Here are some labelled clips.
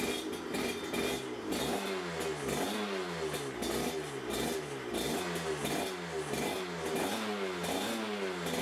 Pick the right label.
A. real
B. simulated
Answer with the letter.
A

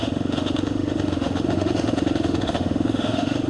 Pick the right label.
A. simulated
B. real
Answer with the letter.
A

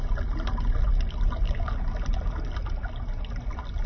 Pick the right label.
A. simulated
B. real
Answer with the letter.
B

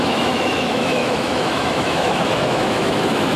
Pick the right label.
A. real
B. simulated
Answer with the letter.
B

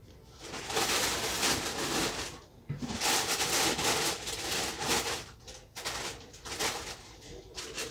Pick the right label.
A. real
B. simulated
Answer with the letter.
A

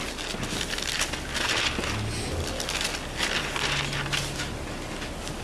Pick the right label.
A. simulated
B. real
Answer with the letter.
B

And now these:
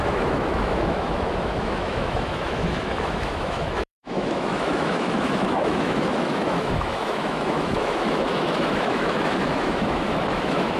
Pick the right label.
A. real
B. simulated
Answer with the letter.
B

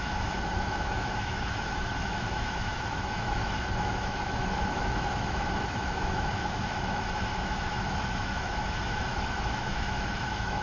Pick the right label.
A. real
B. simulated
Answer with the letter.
B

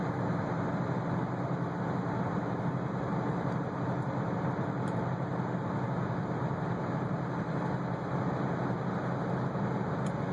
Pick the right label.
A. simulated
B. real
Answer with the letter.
B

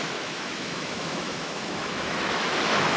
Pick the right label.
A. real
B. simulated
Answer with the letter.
B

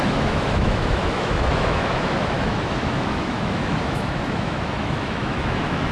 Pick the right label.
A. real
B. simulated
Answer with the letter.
B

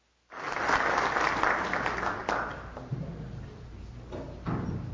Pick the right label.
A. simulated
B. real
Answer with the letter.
B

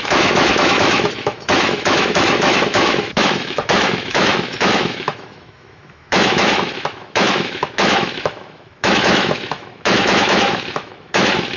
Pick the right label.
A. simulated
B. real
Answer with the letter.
A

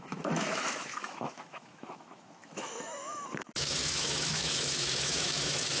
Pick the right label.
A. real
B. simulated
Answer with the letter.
B